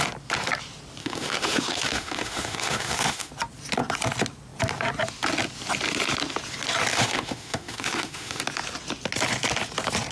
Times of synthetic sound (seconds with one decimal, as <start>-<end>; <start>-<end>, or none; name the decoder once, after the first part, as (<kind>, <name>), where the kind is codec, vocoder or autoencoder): 1.0-3.3 (autoencoder, DAC-VAE); 6.9-8.4